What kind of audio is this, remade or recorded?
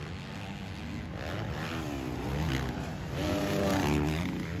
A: recorded